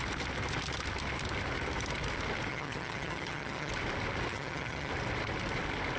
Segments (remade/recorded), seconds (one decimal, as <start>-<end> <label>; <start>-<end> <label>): 0.0-2.5 recorded; 2.5-3.7 remade; 3.7-4.3 recorded; 4.3-4.9 remade; 4.9-6.0 recorded